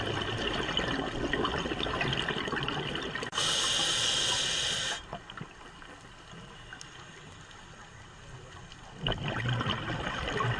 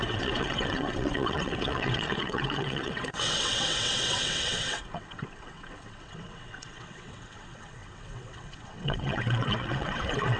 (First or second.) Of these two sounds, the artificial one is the second